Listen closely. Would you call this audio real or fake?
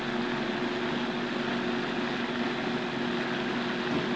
real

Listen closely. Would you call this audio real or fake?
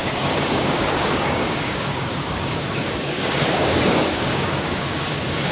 fake